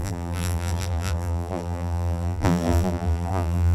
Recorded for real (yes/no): no